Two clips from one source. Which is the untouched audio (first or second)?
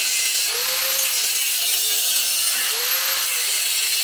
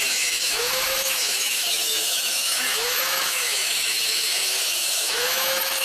first